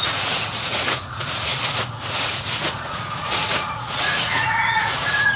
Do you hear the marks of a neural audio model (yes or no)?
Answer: yes